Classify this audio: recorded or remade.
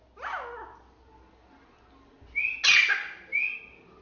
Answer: recorded